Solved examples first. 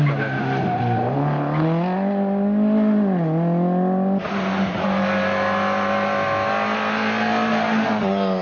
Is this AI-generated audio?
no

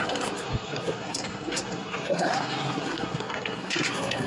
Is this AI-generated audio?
yes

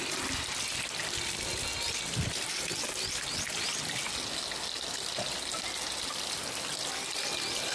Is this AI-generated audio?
no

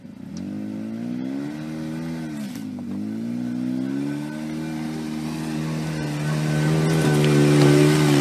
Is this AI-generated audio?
no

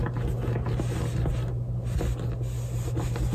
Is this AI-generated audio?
no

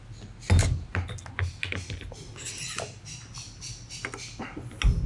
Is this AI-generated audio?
no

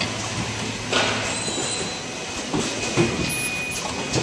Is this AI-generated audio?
no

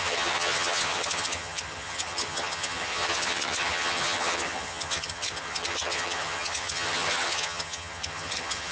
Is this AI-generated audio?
yes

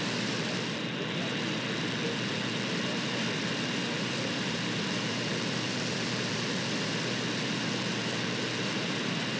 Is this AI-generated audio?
yes